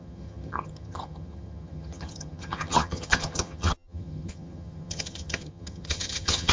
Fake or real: fake